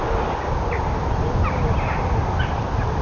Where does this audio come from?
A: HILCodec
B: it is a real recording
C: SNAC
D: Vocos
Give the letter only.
B